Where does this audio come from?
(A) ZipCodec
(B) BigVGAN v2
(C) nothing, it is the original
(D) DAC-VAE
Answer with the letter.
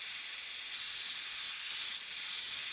C